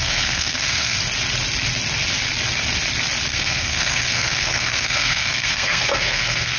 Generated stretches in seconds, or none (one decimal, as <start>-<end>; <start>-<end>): 0.0-1.0; 3.3-6.6